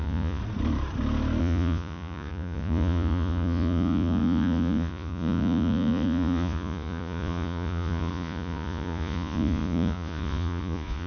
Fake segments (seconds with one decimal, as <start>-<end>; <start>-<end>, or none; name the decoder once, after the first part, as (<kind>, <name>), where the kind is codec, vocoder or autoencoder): 0.0-0.4 (vocoder, Vocos); 1.4-11.1